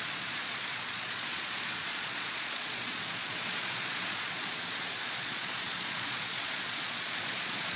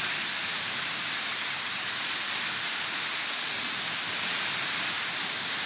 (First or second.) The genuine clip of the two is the second